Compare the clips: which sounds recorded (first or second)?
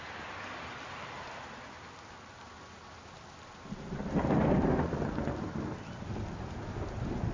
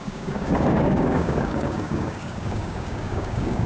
first